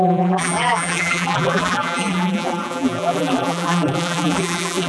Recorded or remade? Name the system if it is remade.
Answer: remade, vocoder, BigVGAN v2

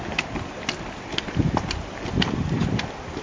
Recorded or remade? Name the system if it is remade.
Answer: remade, vocoder, BigVGAN v2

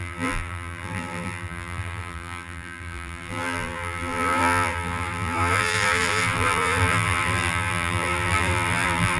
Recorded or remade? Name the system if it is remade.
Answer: remade, vocoder, BigVGAN v2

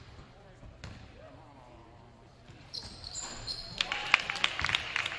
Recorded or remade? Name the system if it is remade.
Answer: remade, vocoder, BigVGAN v2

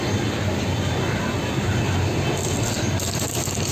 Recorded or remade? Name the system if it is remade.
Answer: recorded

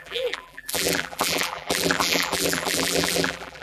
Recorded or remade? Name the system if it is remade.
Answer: remade, vocoder, BigVGAN v2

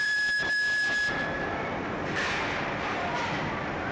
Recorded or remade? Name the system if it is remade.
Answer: remade, vocoder, BigVGAN v2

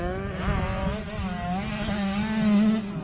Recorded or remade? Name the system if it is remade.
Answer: recorded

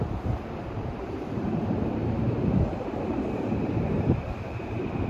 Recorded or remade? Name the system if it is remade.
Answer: remade, vocoder, BigVGAN v2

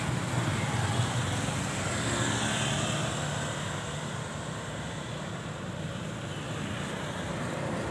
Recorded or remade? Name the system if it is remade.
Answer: recorded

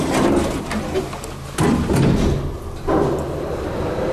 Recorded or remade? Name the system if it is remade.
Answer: recorded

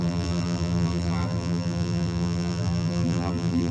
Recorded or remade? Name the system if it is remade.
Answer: remade, vocoder, BigVGAN v2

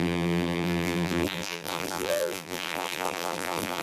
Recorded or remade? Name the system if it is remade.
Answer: remade, vocoder, BigVGAN v2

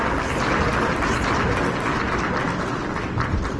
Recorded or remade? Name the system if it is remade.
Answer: recorded